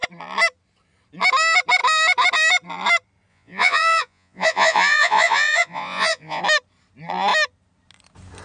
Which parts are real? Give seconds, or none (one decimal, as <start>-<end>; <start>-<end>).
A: 0.0-3.3; 6.4-8.4